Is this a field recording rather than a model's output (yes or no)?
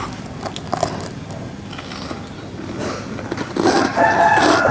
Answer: yes